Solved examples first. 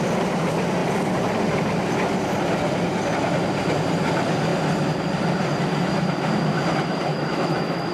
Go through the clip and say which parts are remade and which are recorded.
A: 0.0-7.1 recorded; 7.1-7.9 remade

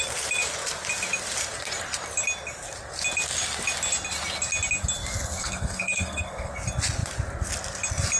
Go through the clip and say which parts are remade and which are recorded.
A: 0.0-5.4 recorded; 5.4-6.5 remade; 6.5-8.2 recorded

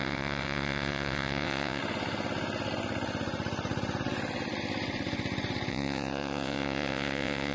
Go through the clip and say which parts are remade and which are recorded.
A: 0.0-1.8 remade; 1.8-5.7 recorded; 5.7-7.5 remade

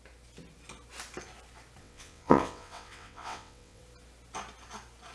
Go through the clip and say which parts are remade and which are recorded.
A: 0.0-1.8 recorded; 1.8-3.8 remade; 3.8-5.1 recorded